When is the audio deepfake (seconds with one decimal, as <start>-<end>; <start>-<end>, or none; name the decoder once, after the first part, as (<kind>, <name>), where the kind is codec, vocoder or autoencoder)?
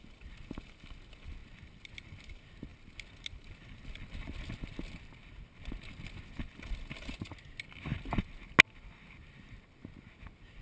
none